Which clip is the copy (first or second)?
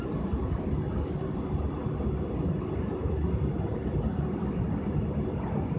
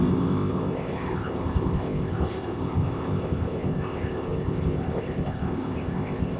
second